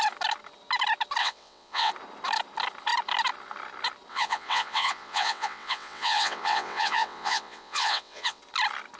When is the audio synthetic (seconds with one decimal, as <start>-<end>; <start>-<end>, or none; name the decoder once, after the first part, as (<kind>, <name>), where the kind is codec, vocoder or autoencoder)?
1.2-1.9 (vocoder, WaveNeXt); 4.1-8.4